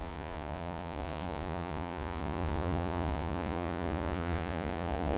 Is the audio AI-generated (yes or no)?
yes